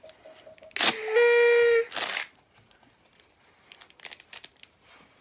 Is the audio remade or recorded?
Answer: recorded